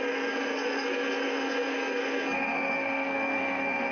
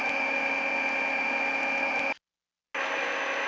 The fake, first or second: first